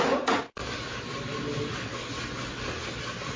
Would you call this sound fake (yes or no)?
no